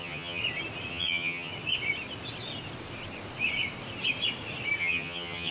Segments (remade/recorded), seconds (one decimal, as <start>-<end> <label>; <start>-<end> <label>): 0.0-0.4 remade; 0.4-0.9 recorded; 0.9-1.5 remade; 1.5-4.8 recorded; 4.8-5.5 remade